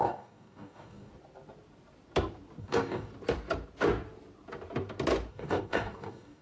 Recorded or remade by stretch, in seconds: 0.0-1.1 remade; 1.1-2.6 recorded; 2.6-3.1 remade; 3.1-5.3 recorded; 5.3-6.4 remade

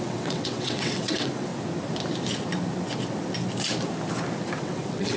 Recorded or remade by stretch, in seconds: 0.0-1.5 remade; 1.5-4.6 recorded; 4.6-5.2 remade

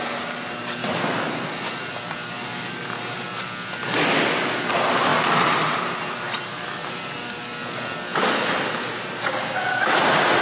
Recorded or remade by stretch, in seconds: 0.0-10.4 recorded

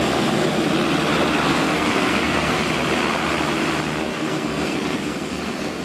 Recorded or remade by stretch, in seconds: 0.0-1.5 recorded; 1.5-2.6 remade; 2.6-4.1 recorded; 4.1-5.8 remade

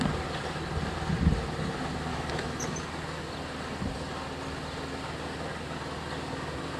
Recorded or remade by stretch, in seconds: 0.0-2.1 recorded; 2.1-2.6 remade; 2.6-6.8 recorded

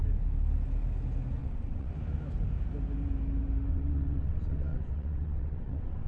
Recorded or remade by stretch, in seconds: 0.0-1.4 recorded; 1.4-1.9 remade; 1.9-3.7 recorded; 3.7-6.1 remade

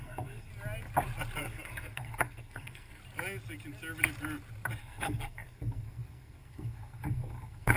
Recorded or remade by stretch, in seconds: 0.0-0.5 remade; 0.5-1.4 recorded; 1.4-3.0 remade; 3.0-4.8 recorded; 4.8-7.8 remade

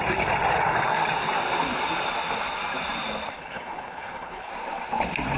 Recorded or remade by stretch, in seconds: 0.0-3.3 recorded; 3.3-4.5 remade; 4.5-5.4 recorded